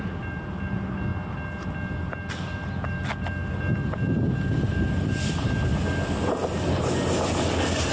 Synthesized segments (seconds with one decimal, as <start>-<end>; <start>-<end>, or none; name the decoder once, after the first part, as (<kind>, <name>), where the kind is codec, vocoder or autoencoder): none